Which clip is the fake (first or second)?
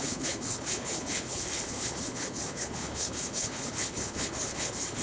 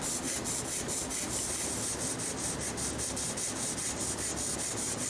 first